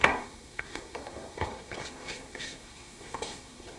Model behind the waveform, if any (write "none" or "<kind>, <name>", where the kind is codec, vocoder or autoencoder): codec, SNAC